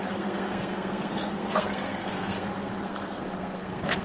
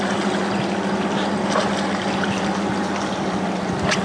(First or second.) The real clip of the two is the second